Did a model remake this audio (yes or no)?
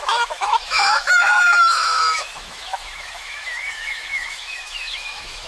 yes